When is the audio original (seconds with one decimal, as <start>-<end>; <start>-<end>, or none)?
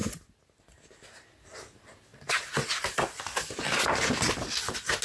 0.0-5.0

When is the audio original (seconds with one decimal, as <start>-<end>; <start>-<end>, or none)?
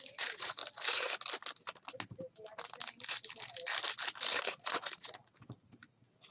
0.6-4.4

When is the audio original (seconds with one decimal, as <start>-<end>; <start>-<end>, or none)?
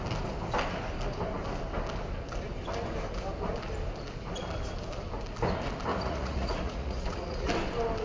0.0-5.9; 7.5-8.0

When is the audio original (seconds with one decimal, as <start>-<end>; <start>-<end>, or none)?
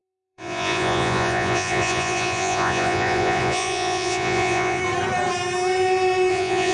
4.8-6.3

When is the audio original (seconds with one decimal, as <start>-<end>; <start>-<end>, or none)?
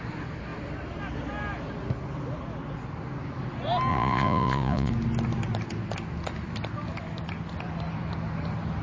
0.0-3.9; 4.9-8.8